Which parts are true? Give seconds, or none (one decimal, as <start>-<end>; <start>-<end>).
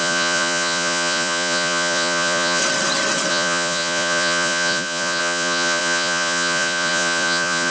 2.6-3.3